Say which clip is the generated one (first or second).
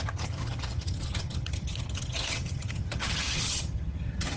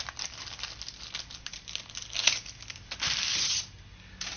first